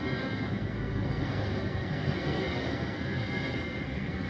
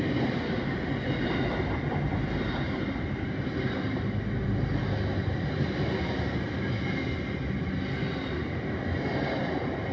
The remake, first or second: first